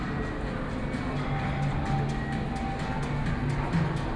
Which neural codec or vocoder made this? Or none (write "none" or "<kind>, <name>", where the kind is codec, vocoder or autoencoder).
none